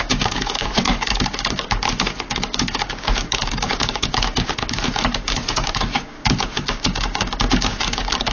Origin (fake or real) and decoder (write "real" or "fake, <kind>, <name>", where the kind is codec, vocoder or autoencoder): fake, codec, DAC